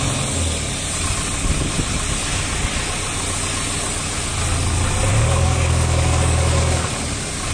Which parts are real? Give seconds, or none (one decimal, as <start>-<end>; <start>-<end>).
0.0-5.1; 6.9-7.5